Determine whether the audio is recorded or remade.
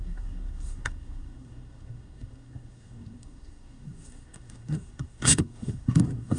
remade